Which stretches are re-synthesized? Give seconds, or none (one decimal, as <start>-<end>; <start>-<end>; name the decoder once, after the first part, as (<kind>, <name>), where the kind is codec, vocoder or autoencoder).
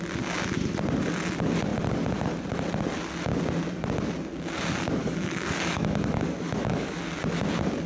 5.0-7.0 (codec, DAC)